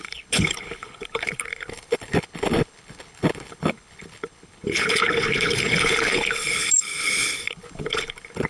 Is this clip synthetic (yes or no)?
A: yes